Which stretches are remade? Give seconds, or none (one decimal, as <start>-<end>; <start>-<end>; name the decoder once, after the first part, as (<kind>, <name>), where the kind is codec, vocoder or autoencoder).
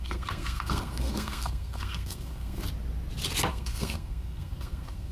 0.0-2.6 (codec, SNAC); 3.5-5.1